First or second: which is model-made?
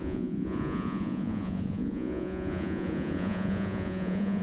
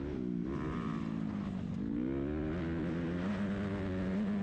first